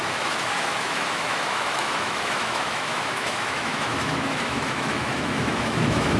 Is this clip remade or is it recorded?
remade